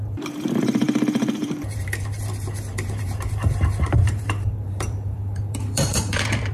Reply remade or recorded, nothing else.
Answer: remade